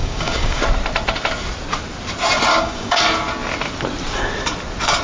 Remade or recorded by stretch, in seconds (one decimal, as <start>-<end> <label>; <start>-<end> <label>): 0.0-0.6 remade; 0.6-2.5 recorded; 2.5-3.0 remade; 3.0-5.0 recorded